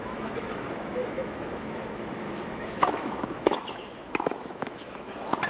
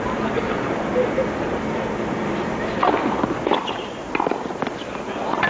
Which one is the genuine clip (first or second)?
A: second